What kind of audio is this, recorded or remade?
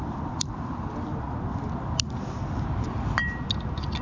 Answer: recorded